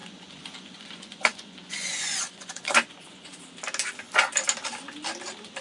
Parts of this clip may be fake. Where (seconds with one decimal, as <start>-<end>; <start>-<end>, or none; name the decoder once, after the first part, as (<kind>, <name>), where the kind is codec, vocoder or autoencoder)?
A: 0.0-3.4 (vocoder, Vocos)